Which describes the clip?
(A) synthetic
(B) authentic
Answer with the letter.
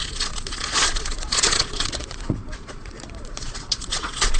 A